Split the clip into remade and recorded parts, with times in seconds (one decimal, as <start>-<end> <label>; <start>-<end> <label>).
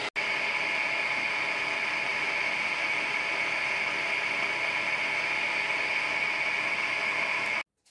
0.0-7.9 recorded